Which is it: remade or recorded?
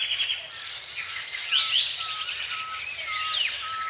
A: recorded